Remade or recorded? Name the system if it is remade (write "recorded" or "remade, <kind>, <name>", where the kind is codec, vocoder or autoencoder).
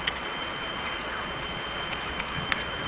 remade, vocoder, Vocos